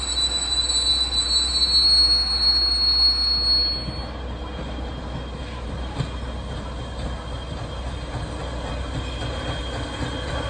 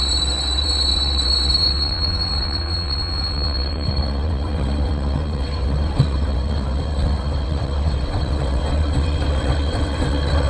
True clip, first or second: first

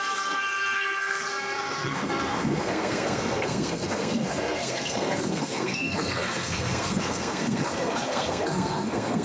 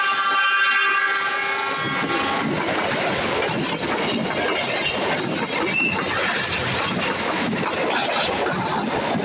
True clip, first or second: second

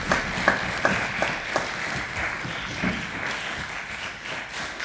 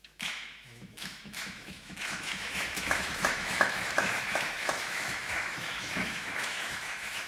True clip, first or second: first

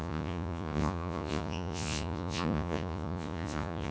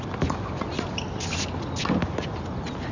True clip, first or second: second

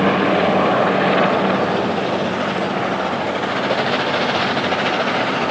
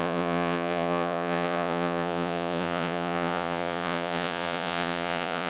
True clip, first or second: first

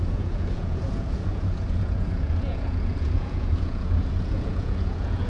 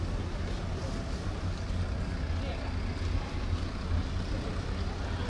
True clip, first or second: second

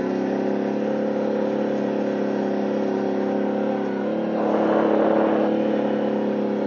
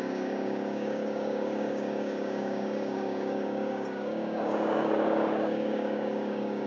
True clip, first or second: first